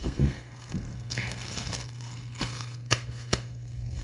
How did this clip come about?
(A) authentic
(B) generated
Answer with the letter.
B